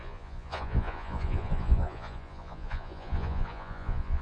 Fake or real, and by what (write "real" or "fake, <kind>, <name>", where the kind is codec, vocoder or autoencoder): fake, vocoder, Vocos